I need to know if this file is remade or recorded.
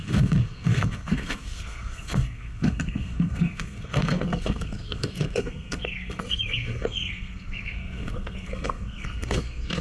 remade